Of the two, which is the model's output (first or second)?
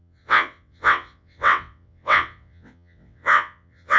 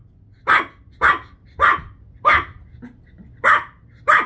first